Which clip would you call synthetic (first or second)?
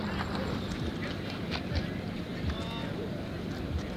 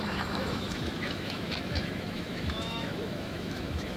second